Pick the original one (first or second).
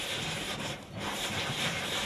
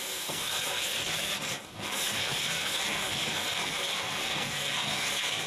first